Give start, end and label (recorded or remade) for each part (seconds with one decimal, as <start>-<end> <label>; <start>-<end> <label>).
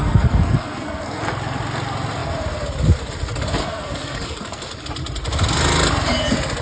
0.0-1.2 remade; 1.2-3.6 recorded; 3.6-4.8 remade; 4.8-6.6 recorded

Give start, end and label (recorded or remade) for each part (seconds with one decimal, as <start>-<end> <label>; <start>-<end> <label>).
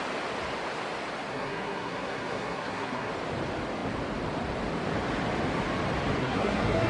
0.0-1.3 recorded; 1.3-3.1 remade; 3.1-6.2 recorded; 6.2-6.9 remade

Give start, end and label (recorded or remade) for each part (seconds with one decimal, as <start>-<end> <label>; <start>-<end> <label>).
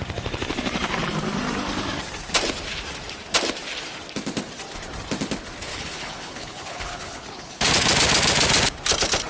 0.0-5.7 recorded; 5.7-7.7 remade; 7.7-9.3 recorded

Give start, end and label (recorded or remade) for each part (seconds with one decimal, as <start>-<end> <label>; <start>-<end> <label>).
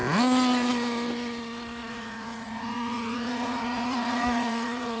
0.0-1.8 recorded; 1.8-5.0 remade